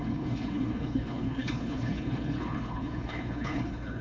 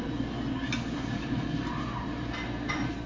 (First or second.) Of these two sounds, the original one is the second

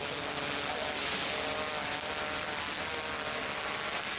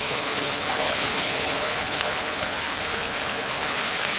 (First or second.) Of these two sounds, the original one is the first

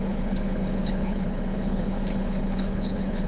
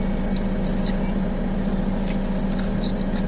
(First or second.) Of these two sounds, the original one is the second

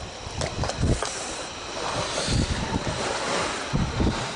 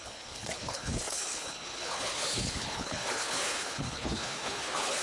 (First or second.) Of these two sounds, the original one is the first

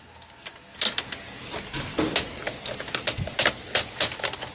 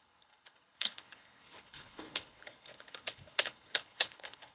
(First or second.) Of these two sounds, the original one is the first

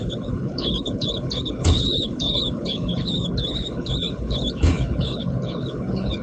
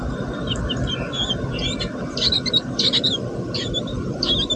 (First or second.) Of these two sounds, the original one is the second